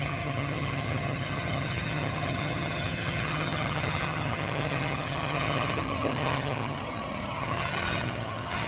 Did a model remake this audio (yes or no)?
yes